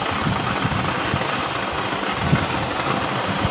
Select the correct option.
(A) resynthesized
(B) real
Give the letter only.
B